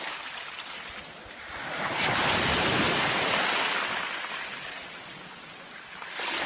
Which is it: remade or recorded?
recorded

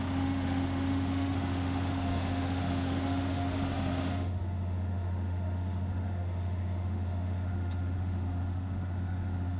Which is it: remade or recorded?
remade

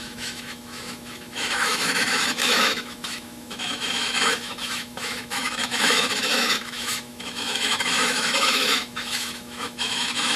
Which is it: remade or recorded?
remade